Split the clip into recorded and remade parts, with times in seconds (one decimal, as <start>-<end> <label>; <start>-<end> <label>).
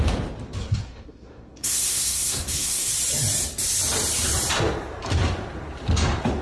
0.0-0.6 recorded; 0.6-2.9 remade; 2.9-6.4 recorded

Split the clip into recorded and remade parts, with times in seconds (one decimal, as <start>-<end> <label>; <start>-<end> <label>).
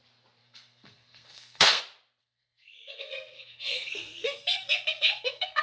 0.0-0.4 recorded; 0.4-1.8 remade; 1.8-2.2 recorded; 2.2-5.6 remade